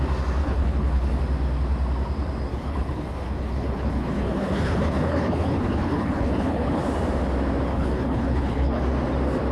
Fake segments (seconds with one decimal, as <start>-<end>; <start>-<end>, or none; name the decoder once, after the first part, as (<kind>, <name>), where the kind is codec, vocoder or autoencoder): 0.4-1.2 (codec, HILCodec); 2.5-6.8; 7.7-8.8